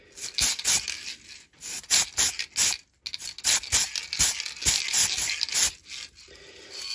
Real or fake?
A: real